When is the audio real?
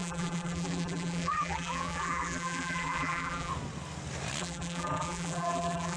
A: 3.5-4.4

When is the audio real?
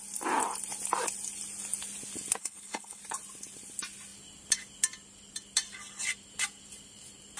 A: 0.0-2.4; 3.0-7.4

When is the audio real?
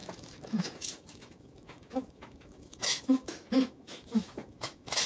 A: none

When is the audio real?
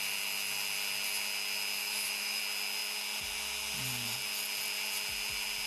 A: 0.0-1.8; 2.4-5.7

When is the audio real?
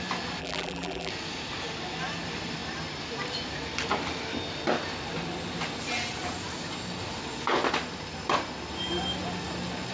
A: 0.0-0.4; 1.1-9.9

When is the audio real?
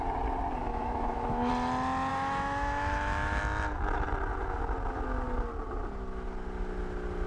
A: 0.0-0.7; 1.5-2.1; 3.4-7.3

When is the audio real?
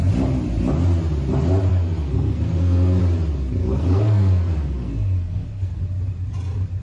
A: 0.0-1.7; 3.0-3.6; 5.8-6.8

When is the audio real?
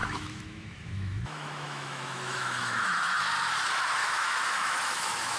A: 3.2-4.0